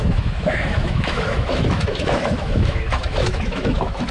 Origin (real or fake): fake